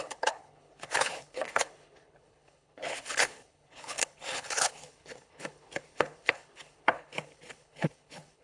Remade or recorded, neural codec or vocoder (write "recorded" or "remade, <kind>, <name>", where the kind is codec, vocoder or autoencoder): remade, codec, HILCodec